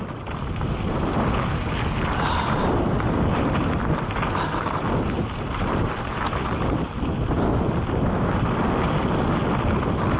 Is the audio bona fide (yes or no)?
yes